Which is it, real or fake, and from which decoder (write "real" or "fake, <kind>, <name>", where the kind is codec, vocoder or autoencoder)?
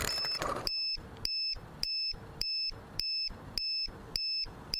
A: real